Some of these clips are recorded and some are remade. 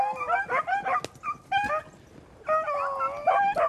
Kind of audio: recorded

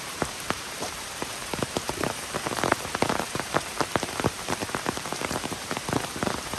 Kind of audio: remade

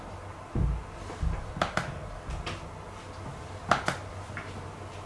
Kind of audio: recorded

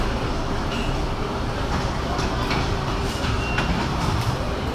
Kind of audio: remade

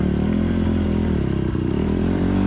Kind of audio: remade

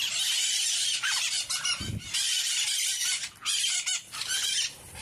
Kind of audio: remade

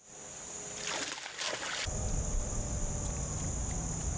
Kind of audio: recorded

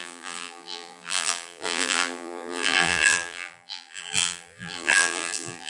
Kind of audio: remade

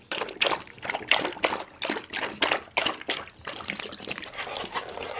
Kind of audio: recorded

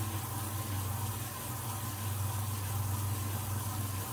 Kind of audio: recorded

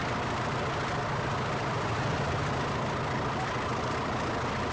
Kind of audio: recorded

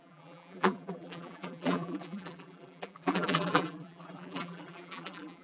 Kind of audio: remade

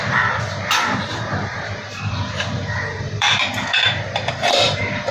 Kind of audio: remade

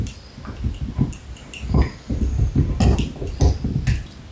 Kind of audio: recorded